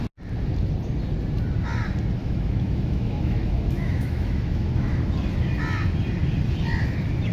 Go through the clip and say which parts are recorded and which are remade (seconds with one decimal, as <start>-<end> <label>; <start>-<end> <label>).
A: 0.0-2.2 recorded; 2.2-5.1 remade; 5.1-7.3 recorded